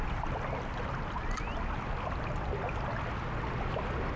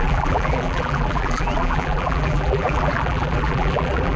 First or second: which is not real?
second